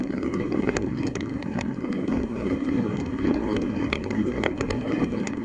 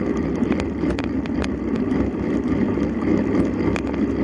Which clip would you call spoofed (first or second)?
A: first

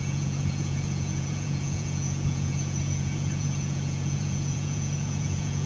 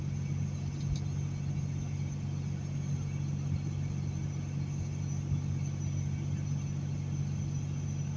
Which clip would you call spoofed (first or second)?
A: first